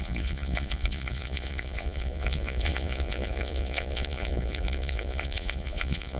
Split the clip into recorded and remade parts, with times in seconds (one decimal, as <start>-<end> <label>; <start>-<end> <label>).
0.0-6.2 remade